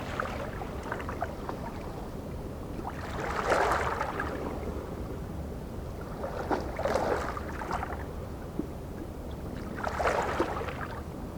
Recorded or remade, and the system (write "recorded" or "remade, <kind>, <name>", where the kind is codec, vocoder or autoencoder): recorded